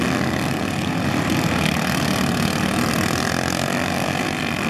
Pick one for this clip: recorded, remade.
recorded